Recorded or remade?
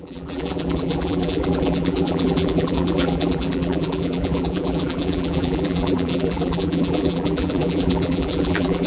remade